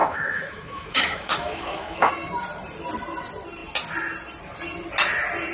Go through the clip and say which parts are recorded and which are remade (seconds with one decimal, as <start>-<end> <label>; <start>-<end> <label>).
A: 0.0-2.1 remade; 2.1-5.5 recorded